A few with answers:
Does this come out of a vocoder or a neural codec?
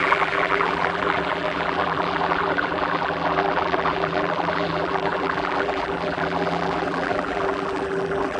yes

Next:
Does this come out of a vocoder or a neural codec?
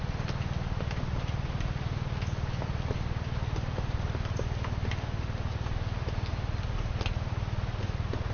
no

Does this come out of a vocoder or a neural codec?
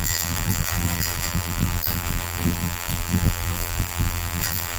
yes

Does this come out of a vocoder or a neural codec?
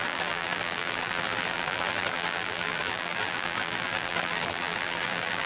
yes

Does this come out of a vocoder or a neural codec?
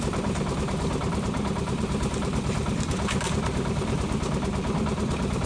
yes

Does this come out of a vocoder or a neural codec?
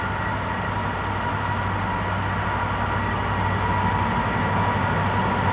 no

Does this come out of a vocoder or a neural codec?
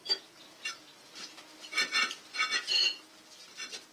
no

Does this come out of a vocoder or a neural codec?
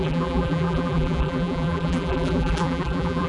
yes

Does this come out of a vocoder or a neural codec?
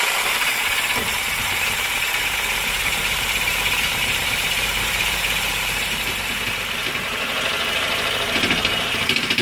yes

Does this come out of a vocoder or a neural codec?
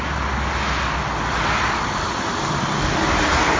no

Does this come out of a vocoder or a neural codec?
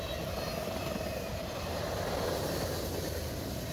no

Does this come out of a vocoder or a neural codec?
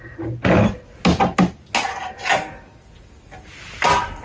no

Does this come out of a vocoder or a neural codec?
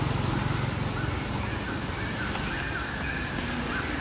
no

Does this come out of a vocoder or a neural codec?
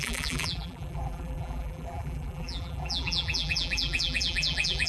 yes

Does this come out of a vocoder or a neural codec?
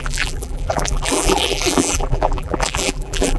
yes